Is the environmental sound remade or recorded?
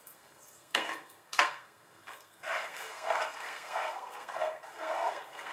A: remade